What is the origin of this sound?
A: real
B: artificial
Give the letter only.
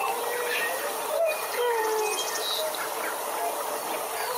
A